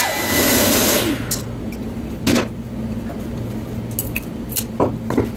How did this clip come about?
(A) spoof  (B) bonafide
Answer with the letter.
B